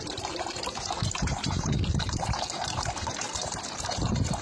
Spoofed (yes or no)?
yes